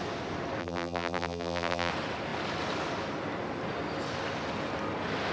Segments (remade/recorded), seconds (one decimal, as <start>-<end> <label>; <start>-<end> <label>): 0.0-0.6 recorded; 0.6-1.9 remade; 1.9-5.3 recorded